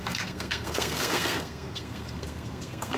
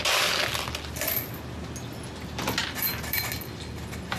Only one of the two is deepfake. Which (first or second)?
first